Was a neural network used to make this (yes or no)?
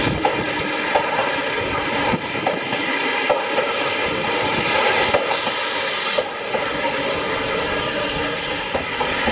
no